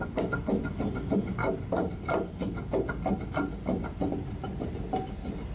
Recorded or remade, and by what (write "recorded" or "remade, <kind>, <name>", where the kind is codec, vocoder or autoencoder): recorded